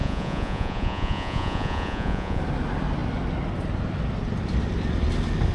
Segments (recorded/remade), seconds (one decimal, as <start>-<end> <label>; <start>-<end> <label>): 0.0-2.4 remade; 2.4-5.5 recorded